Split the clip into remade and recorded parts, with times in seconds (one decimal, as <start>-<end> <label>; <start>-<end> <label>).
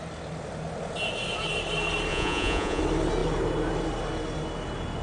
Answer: 0.0-2.1 recorded; 2.1-2.8 remade; 2.8-5.0 recorded